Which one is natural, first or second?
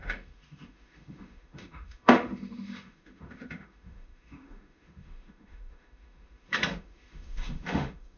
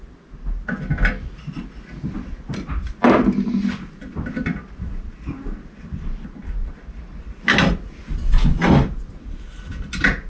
second